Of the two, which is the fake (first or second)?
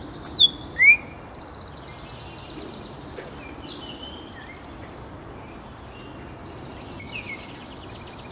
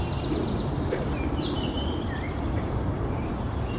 second